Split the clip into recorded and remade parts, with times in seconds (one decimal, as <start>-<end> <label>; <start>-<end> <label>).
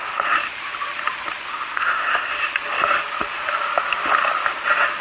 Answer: 0.0-1.5 recorded; 1.5-2.3 remade; 2.3-5.0 recorded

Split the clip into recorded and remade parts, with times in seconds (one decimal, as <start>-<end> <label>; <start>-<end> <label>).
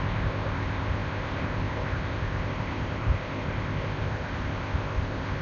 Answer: 0.0-5.4 remade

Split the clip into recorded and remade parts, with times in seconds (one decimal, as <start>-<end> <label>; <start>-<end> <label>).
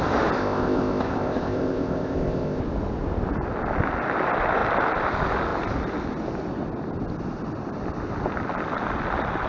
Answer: 0.0-0.4 recorded; 0.4-2.6 remade; 2.6-9.5 recorded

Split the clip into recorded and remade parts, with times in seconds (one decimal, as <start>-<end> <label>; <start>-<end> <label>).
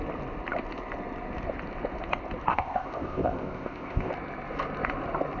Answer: 0.0-2.5 recorded; 2.5-4.1 remade; 4.1-5.4 recorded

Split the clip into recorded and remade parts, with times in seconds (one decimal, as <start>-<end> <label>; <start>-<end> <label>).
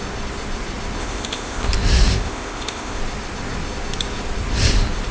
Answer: 0.0-1.0 recorded; 1.0-1.7 remade; 1.7-2.1 recorded; 2.1-3.0 remade; 3.0-5.1 recorded